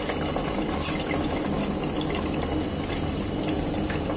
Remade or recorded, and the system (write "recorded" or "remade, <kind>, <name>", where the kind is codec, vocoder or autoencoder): recorded